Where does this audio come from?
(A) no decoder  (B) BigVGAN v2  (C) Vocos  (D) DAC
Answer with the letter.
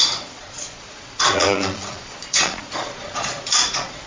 C